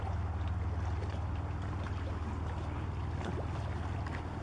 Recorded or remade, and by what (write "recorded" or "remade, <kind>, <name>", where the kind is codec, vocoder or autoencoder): recorded